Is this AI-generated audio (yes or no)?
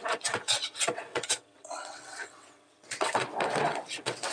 yes